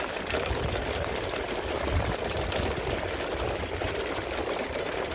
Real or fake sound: real